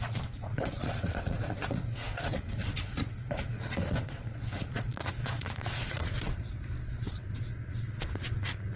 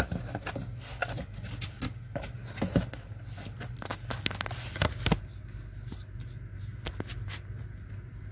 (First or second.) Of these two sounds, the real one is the second